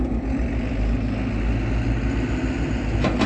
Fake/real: real